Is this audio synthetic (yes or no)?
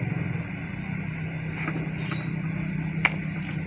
no